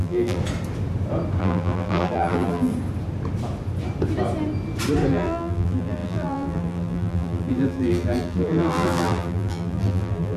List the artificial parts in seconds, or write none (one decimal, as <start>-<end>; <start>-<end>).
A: 0.0-0.4; 1.4-2.7; 5.1-10.4